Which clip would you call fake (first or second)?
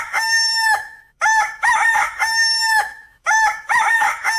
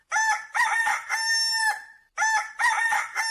first